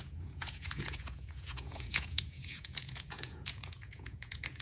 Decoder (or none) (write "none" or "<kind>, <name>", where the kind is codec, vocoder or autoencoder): vocoder, Vocos